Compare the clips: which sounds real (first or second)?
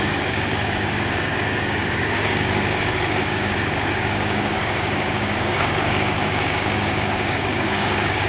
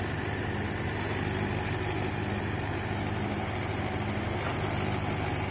second